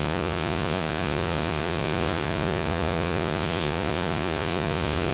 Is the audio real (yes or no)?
no